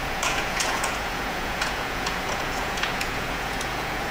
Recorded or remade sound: remade